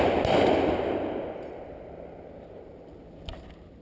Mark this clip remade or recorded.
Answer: recorded